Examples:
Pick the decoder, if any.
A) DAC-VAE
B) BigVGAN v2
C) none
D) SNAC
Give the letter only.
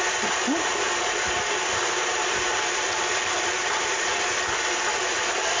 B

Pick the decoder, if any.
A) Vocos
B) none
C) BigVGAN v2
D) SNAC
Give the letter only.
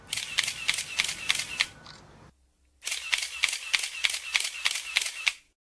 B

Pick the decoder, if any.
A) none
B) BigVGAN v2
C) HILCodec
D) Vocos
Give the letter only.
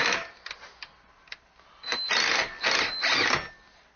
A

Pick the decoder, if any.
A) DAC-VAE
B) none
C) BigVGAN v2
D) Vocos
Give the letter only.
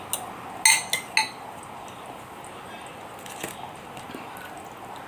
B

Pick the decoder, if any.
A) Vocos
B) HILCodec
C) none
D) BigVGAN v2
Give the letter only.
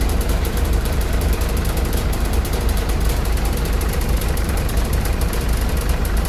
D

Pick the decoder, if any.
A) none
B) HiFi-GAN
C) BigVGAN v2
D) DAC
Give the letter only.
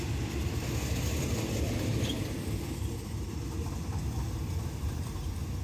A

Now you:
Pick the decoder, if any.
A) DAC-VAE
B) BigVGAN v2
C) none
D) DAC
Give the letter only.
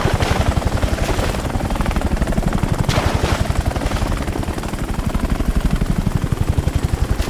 B